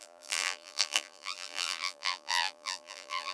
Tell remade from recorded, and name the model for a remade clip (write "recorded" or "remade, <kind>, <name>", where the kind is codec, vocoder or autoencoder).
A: remade, vocoder, BigVGAN v2